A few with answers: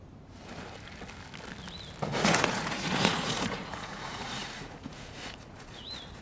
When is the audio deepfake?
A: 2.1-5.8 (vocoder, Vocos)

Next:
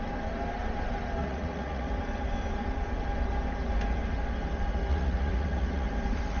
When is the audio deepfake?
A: 1.2-1.9 (vocoder, Vocos); 4.9-5.9

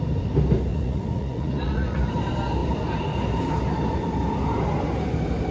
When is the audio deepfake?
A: 0.7-2.1 (vocoder, Vocos)

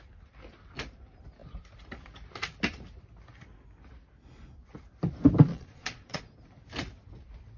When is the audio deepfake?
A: 5.5-6.2 (vocoder, Vocos)

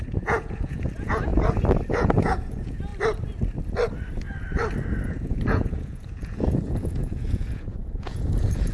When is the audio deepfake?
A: 0.0-1.3 (vocoder, Vocos); 1.9-2.9; 5.1-8.7